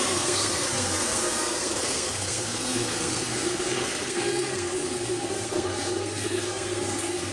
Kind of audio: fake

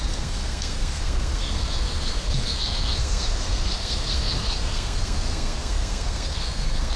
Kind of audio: fake